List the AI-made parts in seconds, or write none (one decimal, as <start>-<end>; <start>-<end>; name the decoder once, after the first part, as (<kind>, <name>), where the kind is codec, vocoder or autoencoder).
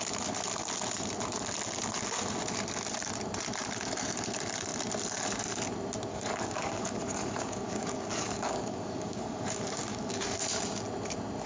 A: 6.1-10.4 (codec, DAC)